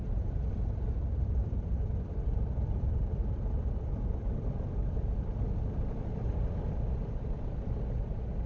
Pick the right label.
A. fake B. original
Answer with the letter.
A